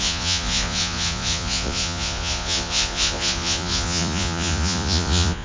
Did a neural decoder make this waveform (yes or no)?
yes